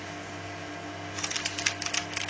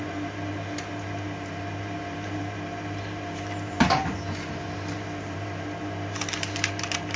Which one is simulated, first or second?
second